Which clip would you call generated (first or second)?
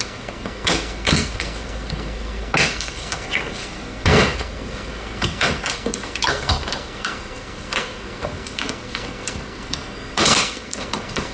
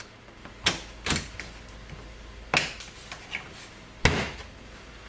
first